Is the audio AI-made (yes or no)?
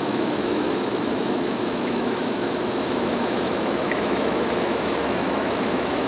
yes